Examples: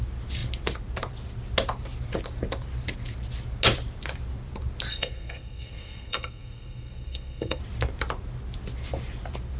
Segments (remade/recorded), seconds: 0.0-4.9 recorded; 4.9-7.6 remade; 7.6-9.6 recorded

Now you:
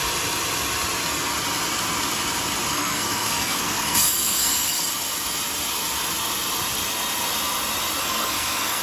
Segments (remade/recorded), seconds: 0.0-2.7 recorded; 2.7-4.8 remade; 4.8-8.0 recorded; 8.0-8.8 remade

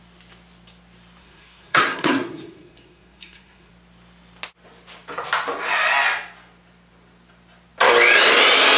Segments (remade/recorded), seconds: 0.0-1.2 recorded; 1.2-3.7 remade; 3.7-8.8 recorded

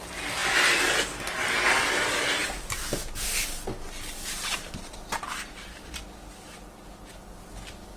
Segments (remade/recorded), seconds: 0.0-8.0 recorded

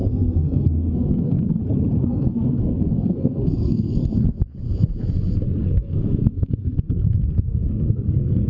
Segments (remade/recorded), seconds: 0.0-1.6 remade; 1.6-2.0 recorded; 2.0-4.1 remade; 4.1-5.6 recorded; 5.6-8.5 remade

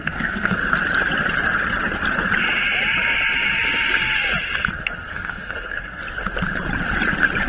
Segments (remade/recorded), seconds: 0.0-0.6 remade; 0.6-4.7 recorded; 4.7-6.0 remade; 6.0-7.5 recorded

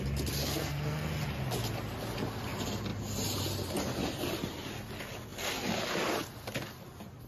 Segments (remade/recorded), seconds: 0.0-0.4 recorded; 0.4-1.1 remade; 1.1-7.3 recorded

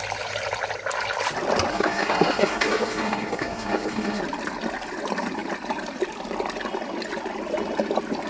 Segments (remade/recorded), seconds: 0.0-1.7 recorded; 1.7-4.2 remade; 4.2-8.3 recorded